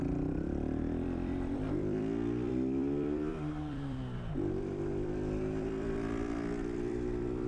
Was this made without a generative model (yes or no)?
no